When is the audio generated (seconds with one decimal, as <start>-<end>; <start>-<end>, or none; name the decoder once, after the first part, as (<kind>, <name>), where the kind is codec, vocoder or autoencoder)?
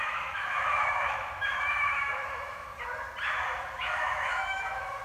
0.0-2.7 (autoencoder, DAC-VAE); 3.6-5.0